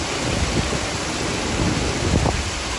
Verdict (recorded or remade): recorded